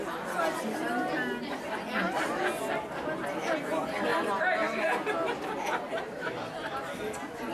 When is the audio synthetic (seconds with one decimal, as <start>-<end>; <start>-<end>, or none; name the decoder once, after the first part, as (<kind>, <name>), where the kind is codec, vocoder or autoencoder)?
none